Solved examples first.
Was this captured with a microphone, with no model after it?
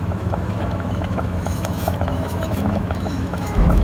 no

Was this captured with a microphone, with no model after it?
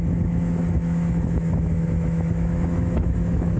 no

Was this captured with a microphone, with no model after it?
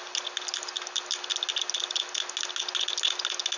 yes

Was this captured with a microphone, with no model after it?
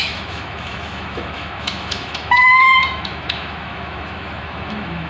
no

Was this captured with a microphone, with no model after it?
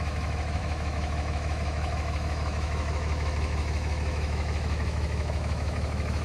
no